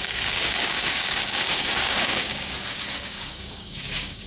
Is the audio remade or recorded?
remade